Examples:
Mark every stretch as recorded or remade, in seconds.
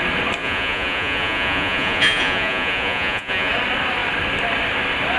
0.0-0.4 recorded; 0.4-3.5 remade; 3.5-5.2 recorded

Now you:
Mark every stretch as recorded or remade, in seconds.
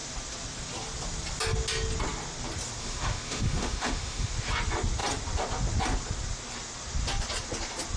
0.0-2.8 recorded; 2.8-4.3 remade; 4.3-8.0 recorded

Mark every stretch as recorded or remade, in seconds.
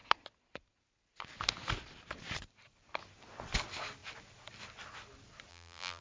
0.0-5.5 recorded; 5.5-6.0 remade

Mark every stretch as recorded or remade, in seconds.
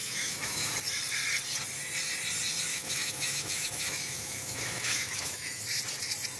0.0-0.7 remade; 0.7-2.7 recorded; 2.7-5.6 remade; 5.6-6.4 recorded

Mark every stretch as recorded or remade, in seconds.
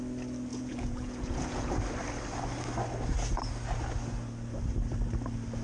0.0-0.5 recorded; 0.5-1.8 remade; 1.8-5.6 recorded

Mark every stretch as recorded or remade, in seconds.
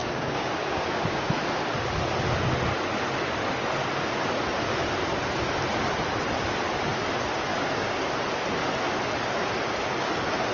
0.0-1.3 remade; 1.3-7.5 recorded; 7.5-8.1 remade; 8.1-10.5 recorded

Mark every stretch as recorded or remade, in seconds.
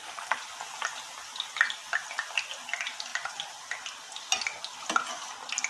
0.0-5.7 recorded